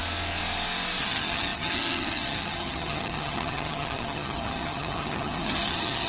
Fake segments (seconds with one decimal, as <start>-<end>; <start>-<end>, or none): 1.0-6.1